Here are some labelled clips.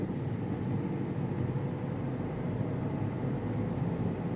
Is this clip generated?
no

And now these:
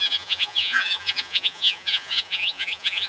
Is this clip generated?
yes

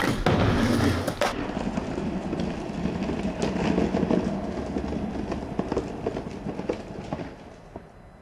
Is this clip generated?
no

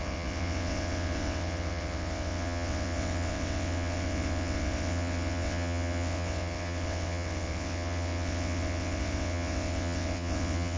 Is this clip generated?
yes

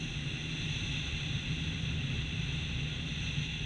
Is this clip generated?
no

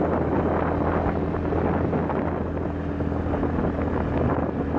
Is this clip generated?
no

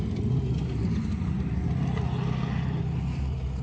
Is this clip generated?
no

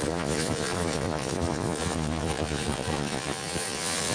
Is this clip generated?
yes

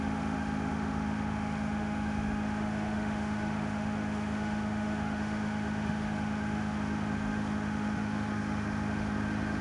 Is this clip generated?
yes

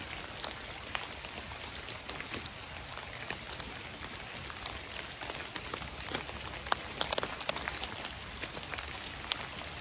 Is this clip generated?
no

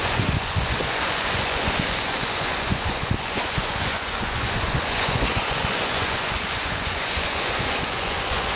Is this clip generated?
yes